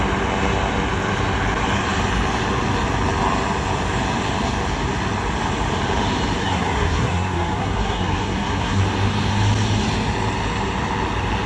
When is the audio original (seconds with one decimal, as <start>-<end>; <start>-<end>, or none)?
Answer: 0.0-6.4; 8.8-11.5